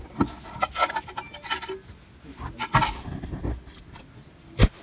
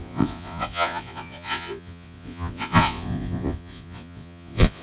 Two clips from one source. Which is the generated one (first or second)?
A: second